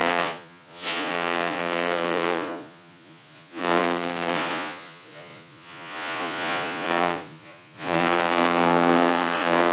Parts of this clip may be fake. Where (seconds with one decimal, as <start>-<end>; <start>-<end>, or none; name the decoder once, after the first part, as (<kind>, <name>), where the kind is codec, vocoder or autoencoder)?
0.0-9.7 (vocoder, Vocos)